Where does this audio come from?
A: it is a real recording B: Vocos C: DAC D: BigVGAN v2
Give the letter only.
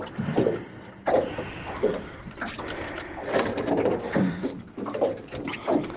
A